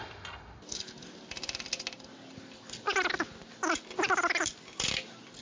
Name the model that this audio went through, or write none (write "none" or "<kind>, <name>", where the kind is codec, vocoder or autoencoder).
none